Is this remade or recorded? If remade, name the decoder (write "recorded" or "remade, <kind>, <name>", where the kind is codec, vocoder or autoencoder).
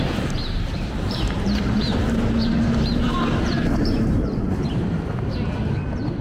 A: remade, vocoder, BigVGAN v2